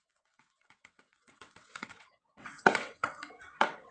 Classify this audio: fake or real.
fake